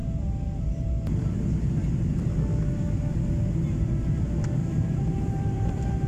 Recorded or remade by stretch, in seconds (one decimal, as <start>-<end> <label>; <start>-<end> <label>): 0.0-4.6 recorded; 4.6-6.1 remade

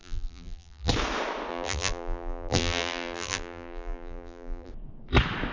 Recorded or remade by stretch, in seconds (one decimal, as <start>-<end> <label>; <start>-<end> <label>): 0.0-0.9 remade; 0.9-1.5 recorded; 1.5-4.7 remade; 4.7-5.5 recorded

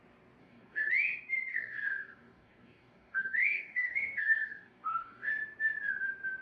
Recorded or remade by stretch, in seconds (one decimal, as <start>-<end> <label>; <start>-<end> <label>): 0.0-0.4 recorded; 0.4-0.9 remade; 0.9-1.5 recorded; 1.5-5.3 remade; 5.3-6.4 recorded

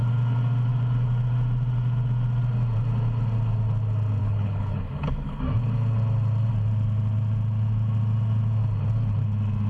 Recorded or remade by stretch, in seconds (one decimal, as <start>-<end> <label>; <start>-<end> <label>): 0.0-4.2 recorded; 4.2-5.4 remade; 5.4-9.7 recorded

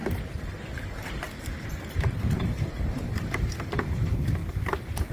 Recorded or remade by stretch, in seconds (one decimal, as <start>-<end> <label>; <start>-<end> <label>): 0.0-3.1 recorded; 3.1-4.4 remade; 4.4-5.1 recorded

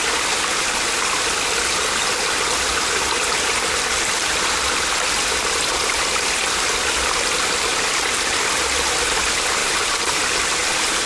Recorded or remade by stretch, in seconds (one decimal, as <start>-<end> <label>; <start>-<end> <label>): 0.0-9.6 recorded; 9.6-10.2 remade; 10.2-11.1 recorded

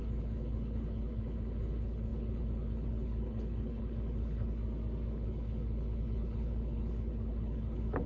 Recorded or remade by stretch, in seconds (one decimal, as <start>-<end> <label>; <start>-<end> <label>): 0.0-4.6 remade; 4.6-5.1 recorded; 5.1-8.1 remade